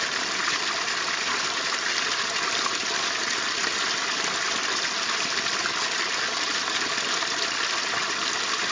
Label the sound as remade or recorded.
recorded